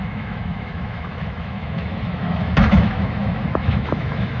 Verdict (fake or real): fake